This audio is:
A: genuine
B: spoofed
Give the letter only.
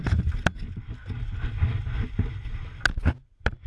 A